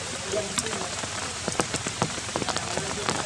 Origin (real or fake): fake